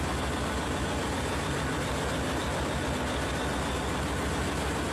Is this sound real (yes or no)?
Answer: yes